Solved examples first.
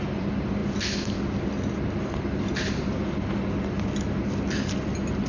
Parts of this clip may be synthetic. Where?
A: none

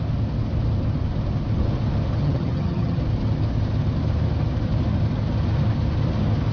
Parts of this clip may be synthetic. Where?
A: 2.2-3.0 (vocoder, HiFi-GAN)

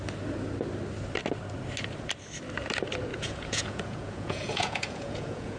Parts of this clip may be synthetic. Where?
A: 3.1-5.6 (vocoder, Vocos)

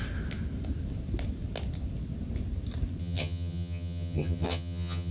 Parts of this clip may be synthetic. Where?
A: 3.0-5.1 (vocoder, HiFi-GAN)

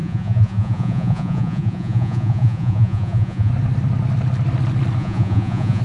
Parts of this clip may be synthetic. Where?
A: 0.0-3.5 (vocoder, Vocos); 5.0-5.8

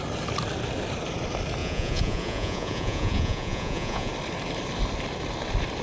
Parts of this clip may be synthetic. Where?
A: 1.6-4.1 (vocoder, Vocos)

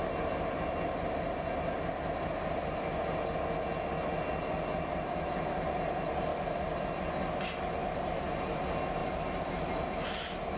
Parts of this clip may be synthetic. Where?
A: 6.3-7.0 (vocoder, BigVGAN v2); 7.8-8.6; 9.0-9.7